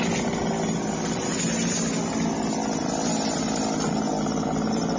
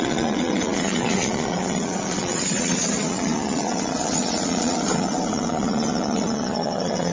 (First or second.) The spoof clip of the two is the second